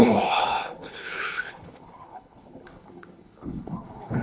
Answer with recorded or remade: remade